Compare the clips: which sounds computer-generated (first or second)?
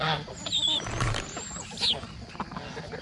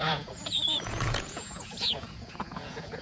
second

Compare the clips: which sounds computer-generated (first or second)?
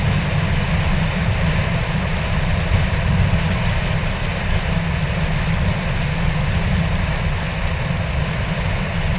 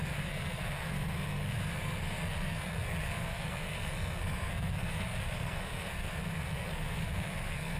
second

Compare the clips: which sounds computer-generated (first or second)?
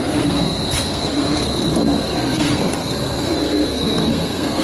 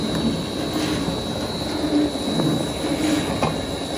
first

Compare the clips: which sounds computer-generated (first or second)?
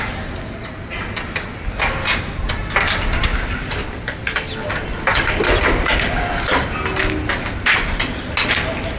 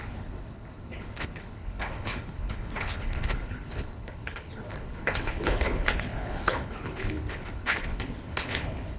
second